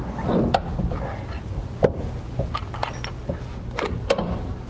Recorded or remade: recorded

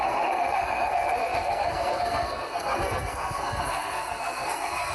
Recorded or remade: remade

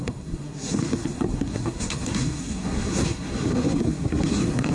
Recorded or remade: remade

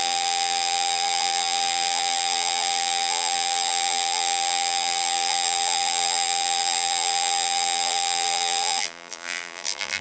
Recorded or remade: remade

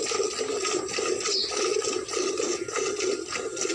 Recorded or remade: recorded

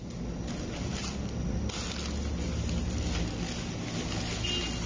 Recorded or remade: recorded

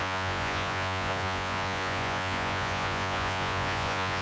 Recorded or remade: remade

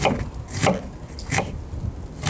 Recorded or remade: recorded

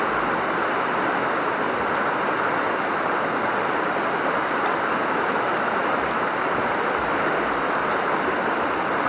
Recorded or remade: recorded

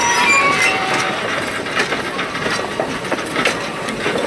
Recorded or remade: remade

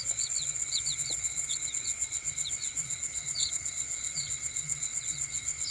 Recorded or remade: remade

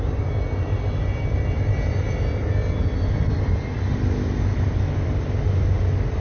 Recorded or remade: recorded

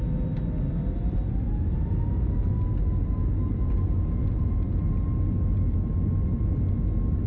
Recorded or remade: recorded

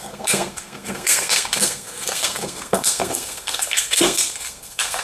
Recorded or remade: remade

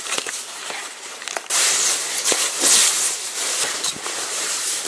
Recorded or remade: remade